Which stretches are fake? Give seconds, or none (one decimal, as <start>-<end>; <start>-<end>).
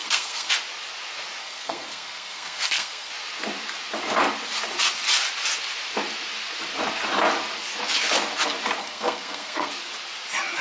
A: 0.0-0.5; 1.4-3.1; 8.8-9.7